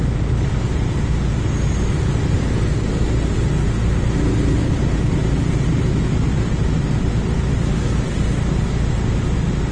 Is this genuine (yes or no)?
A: yes